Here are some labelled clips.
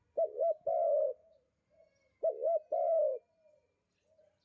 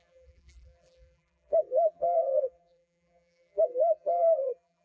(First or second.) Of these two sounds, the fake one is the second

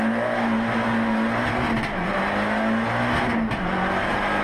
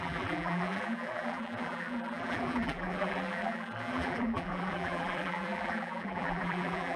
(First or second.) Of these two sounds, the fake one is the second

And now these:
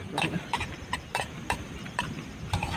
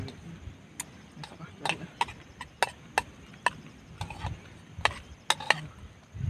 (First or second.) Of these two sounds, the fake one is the first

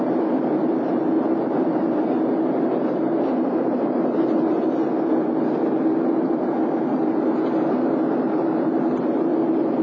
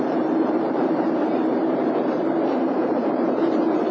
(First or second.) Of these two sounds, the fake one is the second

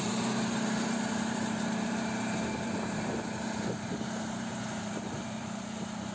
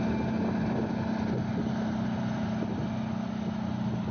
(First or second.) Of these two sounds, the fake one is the first